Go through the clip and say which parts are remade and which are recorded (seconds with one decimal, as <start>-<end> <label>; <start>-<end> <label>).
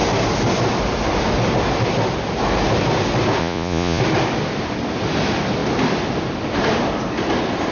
0.0-3.4 recorded; 3.4-4.0 remade; 4.0-7.7 recorded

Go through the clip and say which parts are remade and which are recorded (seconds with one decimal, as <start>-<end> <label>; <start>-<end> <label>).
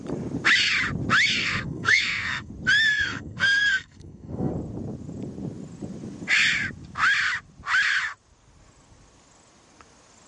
0.0-1.4 recorded; 1.4-2.5 remade; 2.5-2.9 recorded; 2.9-4.5 remade; 4.5-10.3 recorded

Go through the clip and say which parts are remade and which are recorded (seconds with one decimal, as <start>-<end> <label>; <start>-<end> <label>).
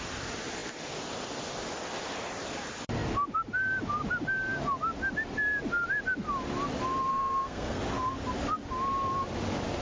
0.0-7.1 recorded; 7.1-7.8 remade; 7.8-9.8 recorded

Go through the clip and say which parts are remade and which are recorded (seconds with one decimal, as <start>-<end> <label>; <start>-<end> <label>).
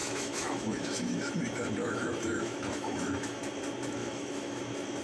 0.0-1.3 remade; 1.3-1.8 recorded; 1.8-3.4 remade; 3.4-4.0 recorded; 4.0-4.6 remade; 4.6-5.0 recorded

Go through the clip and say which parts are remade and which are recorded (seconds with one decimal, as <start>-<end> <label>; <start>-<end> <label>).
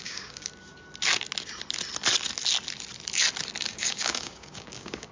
0.0-0.5 remade; 0.5-3.6 recorded; 3.6-5.1 remade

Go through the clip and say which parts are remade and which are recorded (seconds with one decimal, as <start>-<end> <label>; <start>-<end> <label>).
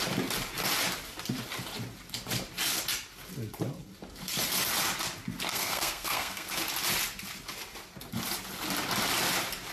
0.0-5.5 recorded; 5.5-6.5 remade; 6.5-9.7 recorded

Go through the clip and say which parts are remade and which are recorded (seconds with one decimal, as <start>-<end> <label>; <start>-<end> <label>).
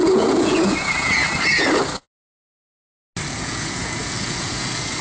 0.0-1.2 remade; 1.2-3.3 recorded; 3.3-5.0 remade